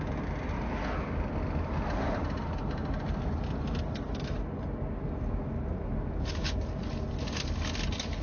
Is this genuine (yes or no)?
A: yes